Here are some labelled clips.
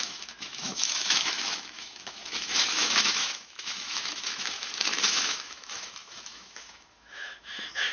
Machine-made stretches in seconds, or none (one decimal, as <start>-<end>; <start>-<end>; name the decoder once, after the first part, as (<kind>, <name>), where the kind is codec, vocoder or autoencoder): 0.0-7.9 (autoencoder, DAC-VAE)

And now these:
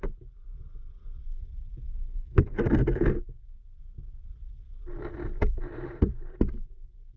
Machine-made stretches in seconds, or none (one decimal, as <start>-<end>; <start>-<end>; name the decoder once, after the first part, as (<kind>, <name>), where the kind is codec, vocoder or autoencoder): 2.1-3.1 (codec, SNAC)

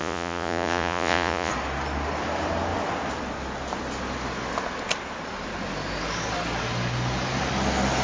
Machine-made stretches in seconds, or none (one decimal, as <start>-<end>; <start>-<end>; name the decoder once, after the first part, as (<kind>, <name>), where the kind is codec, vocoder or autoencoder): 0.0-1.5 (vocoder, Vocos)